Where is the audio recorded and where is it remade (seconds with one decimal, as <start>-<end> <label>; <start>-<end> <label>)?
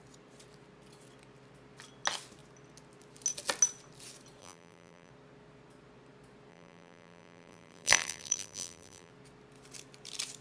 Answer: 0.0-4.4 recorded; 4.4-5.1 remade; 5.1-6.5 recorded; 6.5-9.1 remade; 9.1-10.4 recorded